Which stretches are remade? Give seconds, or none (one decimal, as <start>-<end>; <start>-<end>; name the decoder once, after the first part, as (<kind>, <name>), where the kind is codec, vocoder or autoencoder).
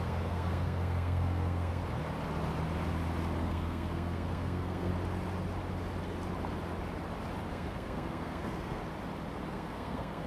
0.0-1.8 (codec, SNAC); 3.4-4.9; 7.5-8.8; 9.5-10.3